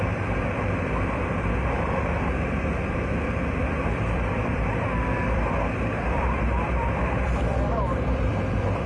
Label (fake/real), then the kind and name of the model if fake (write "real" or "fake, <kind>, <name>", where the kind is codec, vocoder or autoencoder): fake, vocoder, BigVGAN v2